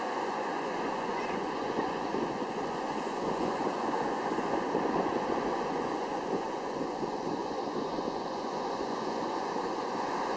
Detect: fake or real fake